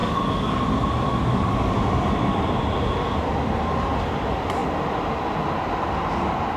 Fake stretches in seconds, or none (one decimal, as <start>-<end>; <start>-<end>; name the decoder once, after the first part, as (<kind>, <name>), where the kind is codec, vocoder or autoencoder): 0.0-0.6 (codec, DAC); 1.1-1.7

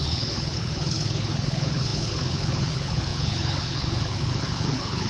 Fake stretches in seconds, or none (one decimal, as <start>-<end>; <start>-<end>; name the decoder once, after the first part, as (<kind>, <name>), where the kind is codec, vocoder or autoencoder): 0.0-5.1 (codec, HILCodec)